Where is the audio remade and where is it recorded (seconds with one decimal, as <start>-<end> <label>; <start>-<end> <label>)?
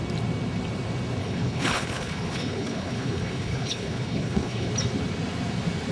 0.0-1.2 recorded; 1.2-4.7 remade; 4.7-5.9 recorded